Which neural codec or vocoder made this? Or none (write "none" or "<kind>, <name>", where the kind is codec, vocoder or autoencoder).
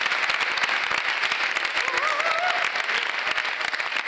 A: none